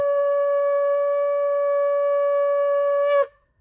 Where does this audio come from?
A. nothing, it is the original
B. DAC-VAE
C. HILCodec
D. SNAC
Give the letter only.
B